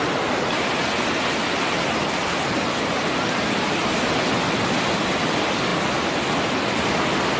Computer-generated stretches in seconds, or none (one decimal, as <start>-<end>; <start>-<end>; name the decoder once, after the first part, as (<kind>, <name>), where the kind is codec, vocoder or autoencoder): none